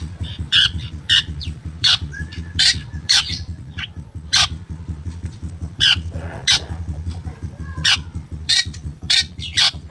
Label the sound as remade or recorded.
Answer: remade